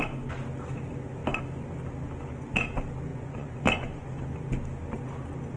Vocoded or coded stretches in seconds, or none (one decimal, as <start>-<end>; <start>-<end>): 3.1-4.1